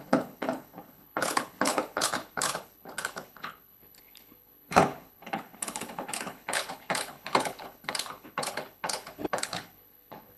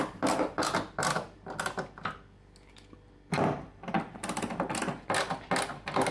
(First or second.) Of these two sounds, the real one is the second